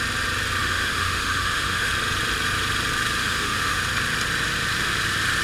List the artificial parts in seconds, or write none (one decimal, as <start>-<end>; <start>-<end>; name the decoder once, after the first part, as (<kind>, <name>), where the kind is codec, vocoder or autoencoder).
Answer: 0.6-1.9 (autoencoder, DAC-VAE); 3.2-3.8